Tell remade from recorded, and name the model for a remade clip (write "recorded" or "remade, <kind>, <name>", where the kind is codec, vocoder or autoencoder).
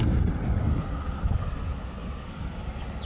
recorded